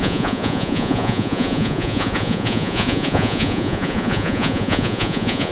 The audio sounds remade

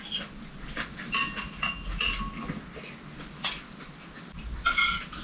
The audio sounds recorded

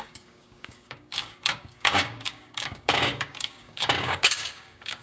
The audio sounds remade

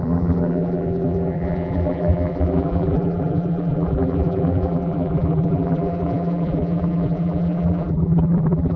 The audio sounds remade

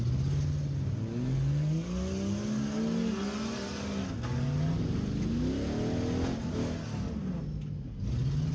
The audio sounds recorded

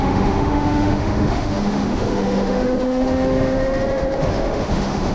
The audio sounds remade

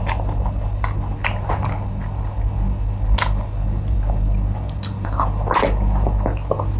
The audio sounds recorded